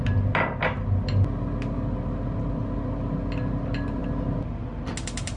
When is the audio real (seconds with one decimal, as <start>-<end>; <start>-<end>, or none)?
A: 0.0-5.4